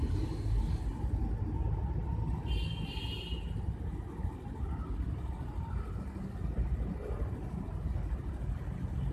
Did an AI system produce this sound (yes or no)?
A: no